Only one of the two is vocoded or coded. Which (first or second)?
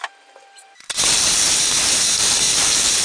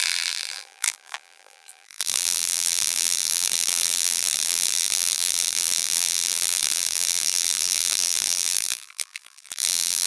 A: second